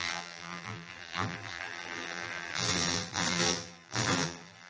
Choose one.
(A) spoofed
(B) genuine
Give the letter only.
A